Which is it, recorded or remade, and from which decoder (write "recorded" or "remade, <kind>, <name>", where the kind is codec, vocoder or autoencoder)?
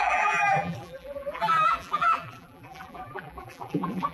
remade, vocoder, BigVGAN v2